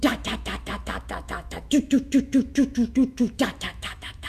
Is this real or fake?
fake